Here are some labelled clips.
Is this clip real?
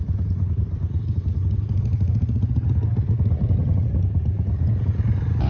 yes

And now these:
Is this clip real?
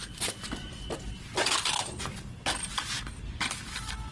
yes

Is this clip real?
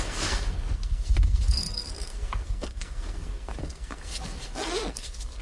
no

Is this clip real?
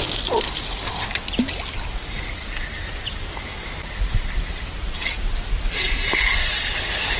yes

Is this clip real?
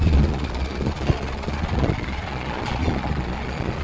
no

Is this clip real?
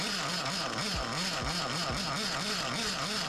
yes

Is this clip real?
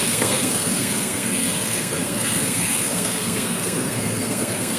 no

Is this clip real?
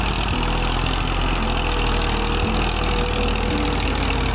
yes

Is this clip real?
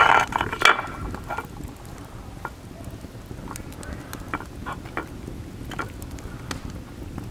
yes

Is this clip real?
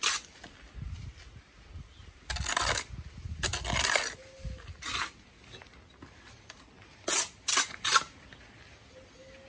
yes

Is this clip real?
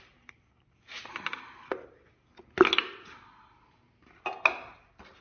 yes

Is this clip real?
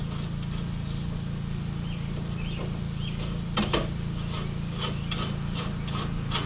yes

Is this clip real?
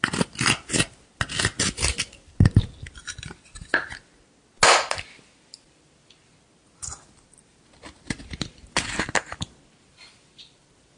yes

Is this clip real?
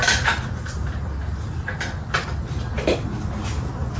yes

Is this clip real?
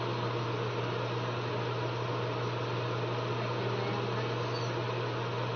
yes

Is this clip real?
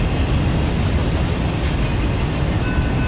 yes